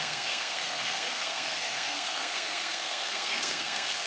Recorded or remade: remade